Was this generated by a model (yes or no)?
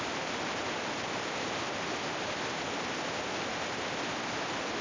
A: no